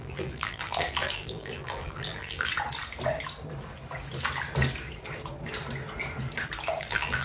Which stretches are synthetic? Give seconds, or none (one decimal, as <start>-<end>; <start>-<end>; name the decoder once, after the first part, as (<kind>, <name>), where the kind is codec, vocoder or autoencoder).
0.0-2.5 (vocoder, BigVGAN v2); 6.8-7.2